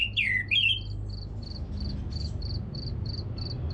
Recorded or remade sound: recorded